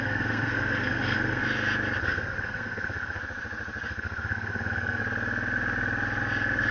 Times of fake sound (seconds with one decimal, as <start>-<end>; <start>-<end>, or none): 0.0-1.4; 2.0-3.2; 3.9-5.0